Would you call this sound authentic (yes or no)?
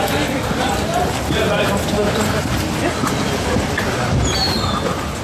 yes